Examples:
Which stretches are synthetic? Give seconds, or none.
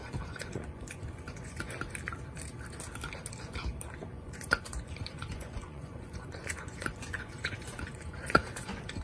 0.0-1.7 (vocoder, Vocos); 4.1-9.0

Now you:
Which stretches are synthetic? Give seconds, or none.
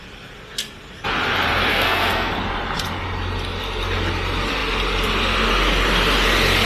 1.7-2.3 (codec, SNAC)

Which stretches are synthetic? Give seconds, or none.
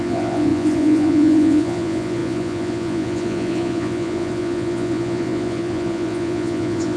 0.0-7.0 (vocoder, Vocos)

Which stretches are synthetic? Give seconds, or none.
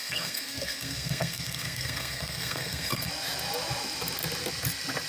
0.0-3.1 (codec, SNAC)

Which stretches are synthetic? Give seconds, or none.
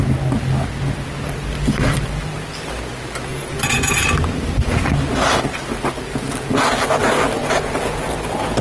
3.3-4.1 (vocoder, Vocos); 7.4-8.1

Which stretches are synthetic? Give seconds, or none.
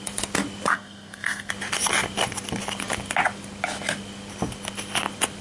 0.7-1.5 (codec, SNAC)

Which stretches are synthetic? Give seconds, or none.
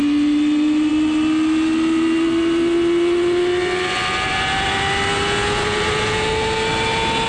none